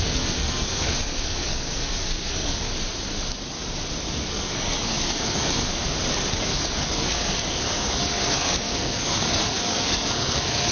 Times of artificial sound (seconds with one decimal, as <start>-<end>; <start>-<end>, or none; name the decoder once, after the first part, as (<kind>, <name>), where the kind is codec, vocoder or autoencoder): 0.0-2.7 (codec, SNAC); 4.3-5.7; 6.3-10.7